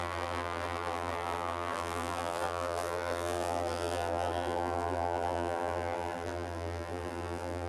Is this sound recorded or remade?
remade